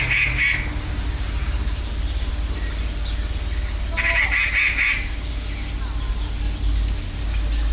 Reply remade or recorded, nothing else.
recorded